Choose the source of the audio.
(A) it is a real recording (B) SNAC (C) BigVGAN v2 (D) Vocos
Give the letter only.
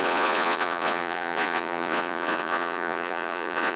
D